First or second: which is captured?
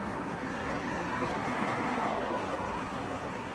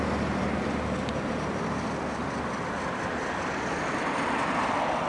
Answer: second